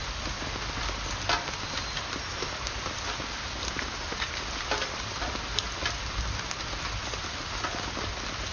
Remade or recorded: recorded